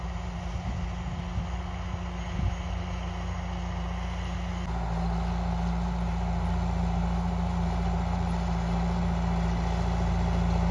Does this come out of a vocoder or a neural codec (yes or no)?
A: no